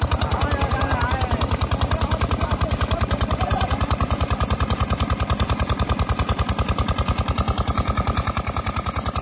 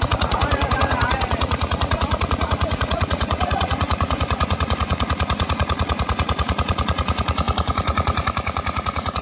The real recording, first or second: first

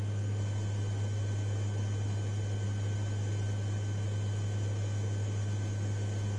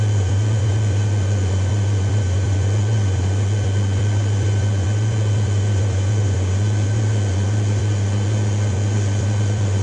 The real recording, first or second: first